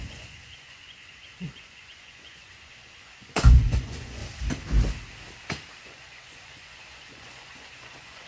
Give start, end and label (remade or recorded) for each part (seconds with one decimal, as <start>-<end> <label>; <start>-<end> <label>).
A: 0.0-4.2 remade; 4.2-5.8 recorded; 5.8-8.3 remade